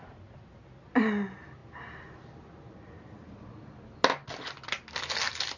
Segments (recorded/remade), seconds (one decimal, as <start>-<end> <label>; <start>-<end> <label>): 0.0-5.6 recorded